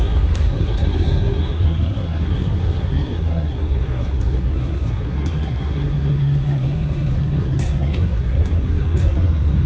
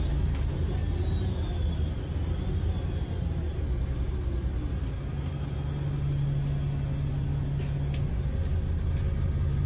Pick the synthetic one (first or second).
first